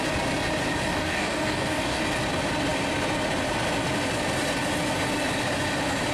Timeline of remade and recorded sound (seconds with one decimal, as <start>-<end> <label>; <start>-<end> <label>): 0.0-0.9 recorded; 0.9-2.0 remade; 2.0-6.1 recorded